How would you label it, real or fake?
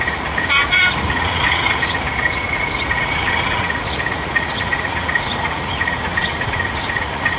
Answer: fake